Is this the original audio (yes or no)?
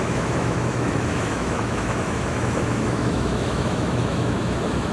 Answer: no